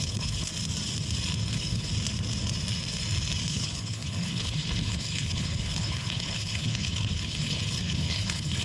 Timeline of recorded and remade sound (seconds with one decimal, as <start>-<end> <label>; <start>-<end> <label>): 0.0-0.5 remade; 0.5-1.5 recorded; 1.5-1.9 remade; 1.9-3.5 recorded; 3.5-8.6 remade